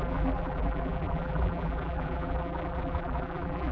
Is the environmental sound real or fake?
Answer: fake